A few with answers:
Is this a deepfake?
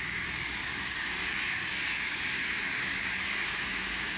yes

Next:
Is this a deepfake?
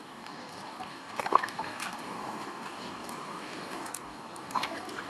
yes